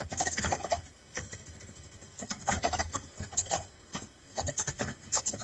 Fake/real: fake